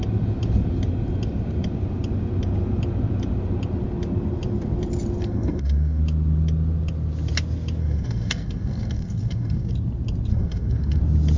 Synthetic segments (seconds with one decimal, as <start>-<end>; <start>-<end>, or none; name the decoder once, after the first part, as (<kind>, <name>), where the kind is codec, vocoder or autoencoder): 5.2-6.0 (codec, SNAC); 7.8-9.7; 10.3-11.0